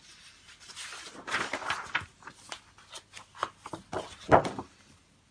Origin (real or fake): real